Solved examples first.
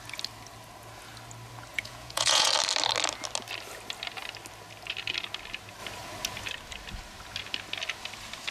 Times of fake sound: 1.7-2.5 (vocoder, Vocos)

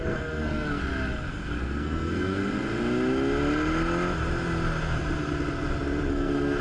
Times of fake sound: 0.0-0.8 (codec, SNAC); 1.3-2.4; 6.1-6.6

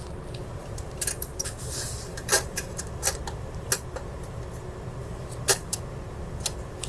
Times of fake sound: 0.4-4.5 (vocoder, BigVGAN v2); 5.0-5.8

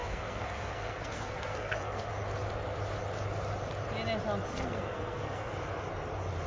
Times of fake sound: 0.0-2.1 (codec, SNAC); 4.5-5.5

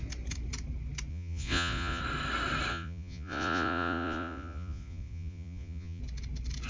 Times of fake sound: 1.1-2.0 (vocoder, Vocos); 2.7-6.0

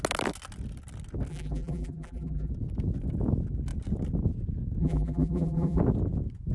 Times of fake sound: 1.3-2.5 (vocoder, BigVGAN v2); 4.8-5.8